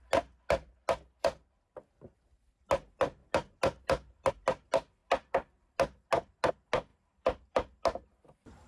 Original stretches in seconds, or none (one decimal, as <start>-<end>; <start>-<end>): 0.0-8.7

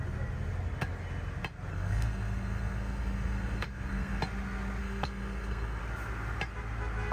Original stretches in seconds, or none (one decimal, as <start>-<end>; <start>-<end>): 0.0-1.7; 4.2-4.8; 5.8-7.1